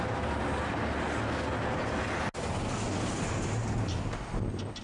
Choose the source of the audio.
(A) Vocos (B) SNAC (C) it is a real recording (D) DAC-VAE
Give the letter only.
C